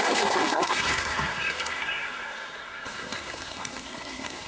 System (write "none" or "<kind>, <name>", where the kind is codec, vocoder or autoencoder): codec, SNAC